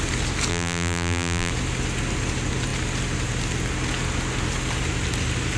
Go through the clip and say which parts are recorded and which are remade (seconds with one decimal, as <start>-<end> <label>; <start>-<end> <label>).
0.0-0.5 recorded; 0.5-1.5 remade; 1.5-5.6 recorded